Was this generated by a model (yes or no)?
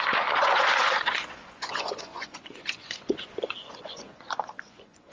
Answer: yes